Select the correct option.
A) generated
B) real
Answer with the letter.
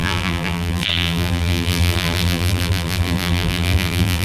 A